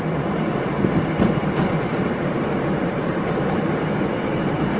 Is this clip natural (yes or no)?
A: no